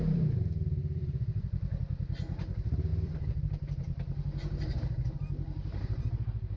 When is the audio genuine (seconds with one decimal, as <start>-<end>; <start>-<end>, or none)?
0.0-0.8; 1.8-2.9